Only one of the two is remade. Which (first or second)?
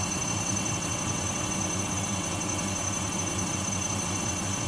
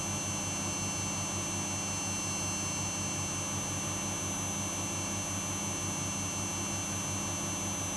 first